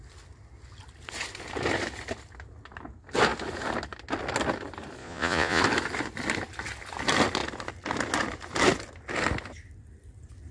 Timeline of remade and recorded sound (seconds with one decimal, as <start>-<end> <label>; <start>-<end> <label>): 0.0-5.0 recorded; 5.0-5.6 remade; 5.6-10.5 recorded